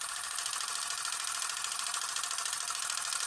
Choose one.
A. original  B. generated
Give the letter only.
A